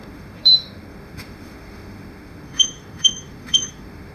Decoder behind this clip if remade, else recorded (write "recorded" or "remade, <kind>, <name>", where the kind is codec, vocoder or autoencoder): remade, autoencoder, DAC-VAE